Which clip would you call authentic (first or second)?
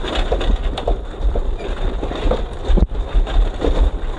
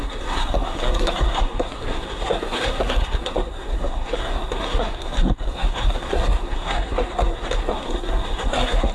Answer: first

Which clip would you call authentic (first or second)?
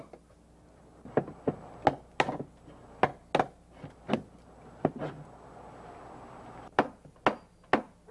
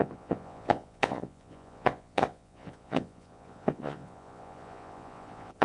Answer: first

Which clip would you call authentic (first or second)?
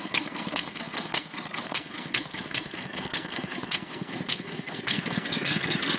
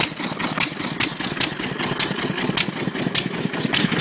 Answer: second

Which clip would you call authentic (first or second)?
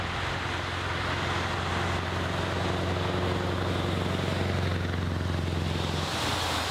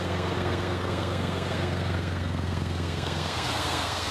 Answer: first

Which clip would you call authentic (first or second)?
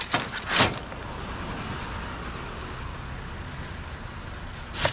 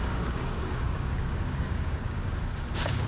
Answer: first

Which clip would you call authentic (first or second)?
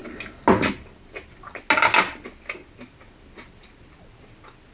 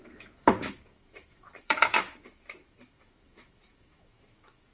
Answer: first